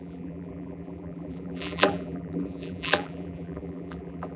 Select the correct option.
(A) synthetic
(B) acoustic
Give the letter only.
A